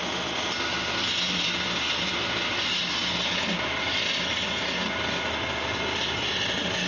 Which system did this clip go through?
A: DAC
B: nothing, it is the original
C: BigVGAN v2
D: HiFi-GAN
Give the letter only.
B